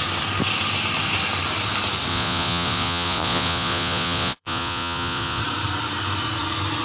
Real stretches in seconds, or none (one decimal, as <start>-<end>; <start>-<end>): 0.0-2.1; 5.4-6.8